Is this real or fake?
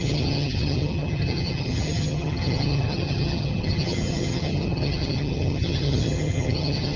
fake